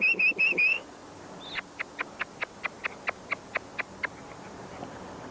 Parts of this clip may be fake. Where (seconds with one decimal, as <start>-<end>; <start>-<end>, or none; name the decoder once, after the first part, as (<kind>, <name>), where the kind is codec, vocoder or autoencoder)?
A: none